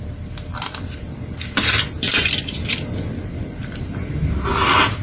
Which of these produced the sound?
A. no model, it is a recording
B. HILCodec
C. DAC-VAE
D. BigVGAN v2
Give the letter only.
D